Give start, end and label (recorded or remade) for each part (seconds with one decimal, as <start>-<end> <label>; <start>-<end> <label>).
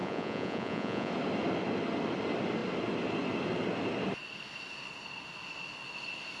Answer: 0.0-1.1 remade; 1.1-6.4 recorded